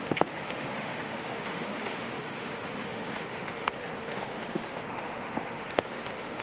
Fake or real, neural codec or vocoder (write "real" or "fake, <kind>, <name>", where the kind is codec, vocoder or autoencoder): fake, autoencoder, DAC-VAE